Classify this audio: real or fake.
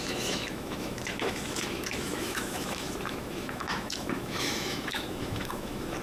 fake